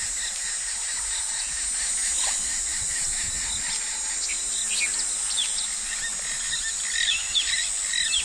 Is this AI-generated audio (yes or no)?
no